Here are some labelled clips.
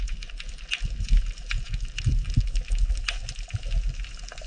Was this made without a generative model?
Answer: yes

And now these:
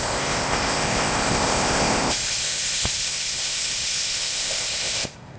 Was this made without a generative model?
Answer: no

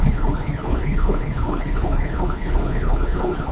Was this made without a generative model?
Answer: no